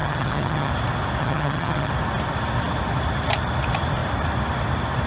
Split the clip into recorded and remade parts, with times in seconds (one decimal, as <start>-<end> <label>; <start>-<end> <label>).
0.0-0.7 remade; 0.7-1.2 recorded; 1.2-1.9 remade; 1.9-5.1 recorded